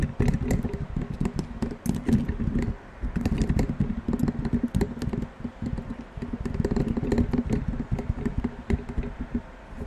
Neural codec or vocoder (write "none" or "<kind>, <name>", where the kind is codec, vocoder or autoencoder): none